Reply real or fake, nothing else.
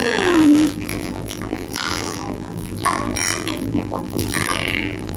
fake